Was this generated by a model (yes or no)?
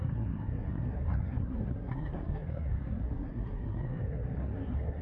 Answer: yes